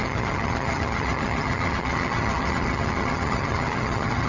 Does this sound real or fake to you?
fake